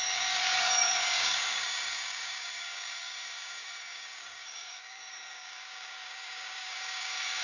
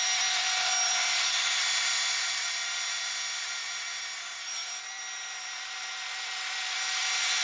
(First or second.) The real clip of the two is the second